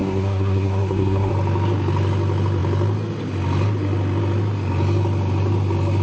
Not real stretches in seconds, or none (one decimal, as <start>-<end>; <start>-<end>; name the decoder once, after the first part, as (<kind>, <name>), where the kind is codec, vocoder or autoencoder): 0.0-1.3 (codec, SNAC)